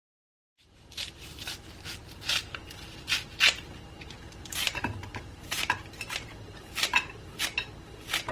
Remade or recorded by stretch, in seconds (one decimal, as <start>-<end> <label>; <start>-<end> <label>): 0.0-0.4 recorded; 0.4-1.5 remade; 1.5-2.0 recorded; 2.0-2.6 remade; 2.6-5.1 recorded; 5.1-7.4 remade; 7.4-8.3 recorded